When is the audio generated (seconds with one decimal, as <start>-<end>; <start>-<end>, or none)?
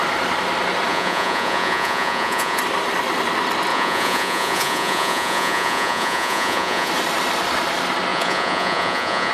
0.9-2.6; 3.7-6.9; 8.1-9.3